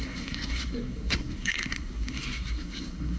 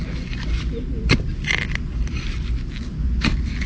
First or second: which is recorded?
second